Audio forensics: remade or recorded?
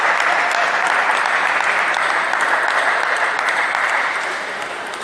recorded